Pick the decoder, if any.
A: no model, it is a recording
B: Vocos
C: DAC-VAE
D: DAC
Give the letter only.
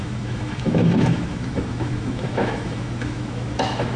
C